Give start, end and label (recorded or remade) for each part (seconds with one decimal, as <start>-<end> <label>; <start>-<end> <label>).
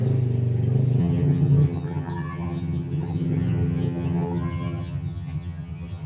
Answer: 0.0-1.0 recorded; 1.0-6.1 remade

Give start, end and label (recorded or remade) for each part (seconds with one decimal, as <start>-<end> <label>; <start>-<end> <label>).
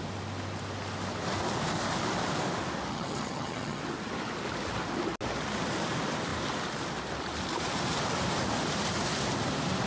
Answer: 0.0-2.9 recorded; 2.9-3.8 remade; 3.8-9.9 recorded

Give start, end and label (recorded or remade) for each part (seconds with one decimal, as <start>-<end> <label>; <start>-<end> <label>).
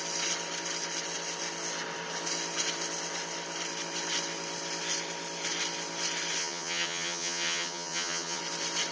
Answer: 0.0-6.4 recorded; 6.4-8.4 remade; 8.4-8.9 recorded